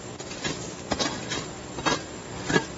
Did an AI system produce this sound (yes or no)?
no